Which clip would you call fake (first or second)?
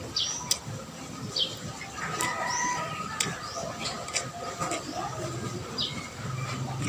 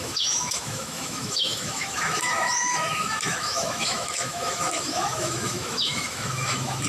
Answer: second